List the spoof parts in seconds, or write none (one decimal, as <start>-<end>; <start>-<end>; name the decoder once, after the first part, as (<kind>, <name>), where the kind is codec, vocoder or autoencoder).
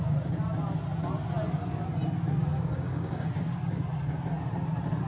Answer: 2.5-3.3 (codec, DAC)